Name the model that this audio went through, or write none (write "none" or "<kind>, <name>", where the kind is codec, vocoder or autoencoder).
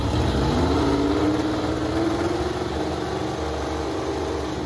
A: none